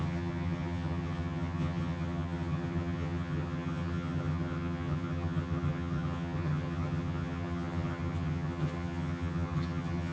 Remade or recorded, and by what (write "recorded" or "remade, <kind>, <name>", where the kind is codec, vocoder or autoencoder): remade, vocoder, HiFi-GAN